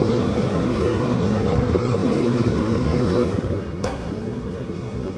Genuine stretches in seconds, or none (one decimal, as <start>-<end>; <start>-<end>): none